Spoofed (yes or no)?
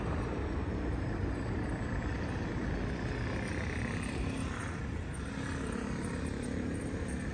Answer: no